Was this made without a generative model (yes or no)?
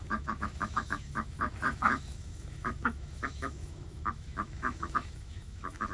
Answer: no